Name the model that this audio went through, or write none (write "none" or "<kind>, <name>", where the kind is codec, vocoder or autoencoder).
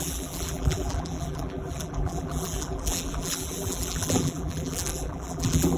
vocoder, BigVGAN v2